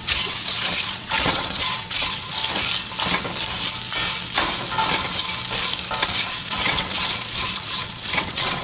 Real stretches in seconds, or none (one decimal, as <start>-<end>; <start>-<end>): 2.4-6.1